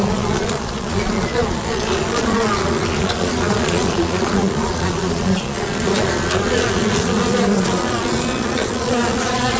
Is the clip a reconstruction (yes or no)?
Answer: yes